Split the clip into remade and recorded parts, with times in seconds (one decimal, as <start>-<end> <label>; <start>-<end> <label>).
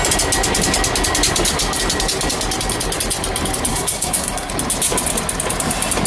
0.0-3.7 recorded; 3.7-4.5 remade; 4.5-6.1 recorded